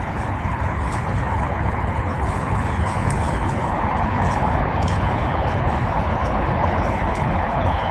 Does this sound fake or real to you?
fake